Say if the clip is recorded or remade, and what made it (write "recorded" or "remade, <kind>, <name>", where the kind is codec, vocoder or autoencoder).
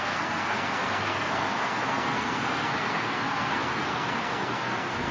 remade, codec, SNAC